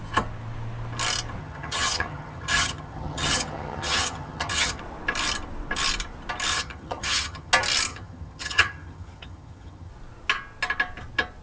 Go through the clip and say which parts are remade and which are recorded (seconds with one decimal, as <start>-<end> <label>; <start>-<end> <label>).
0.0-1.4 recorded; 1.4-4.8 remade; 4.8-6.5 recorded; 6.5-7.5 remade; 7.5-7.9 recorded; 7.9-9.9 remade; 9.9-11.4 recorded